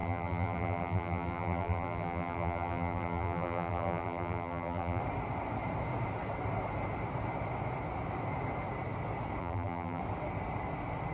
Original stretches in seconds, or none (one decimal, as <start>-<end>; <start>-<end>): 5.0-9.4; 10.0-11.1